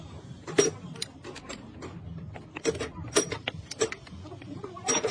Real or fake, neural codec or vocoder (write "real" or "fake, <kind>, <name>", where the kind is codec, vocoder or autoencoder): real